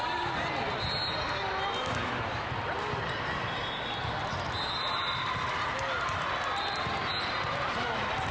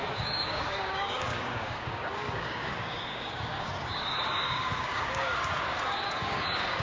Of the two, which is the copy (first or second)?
second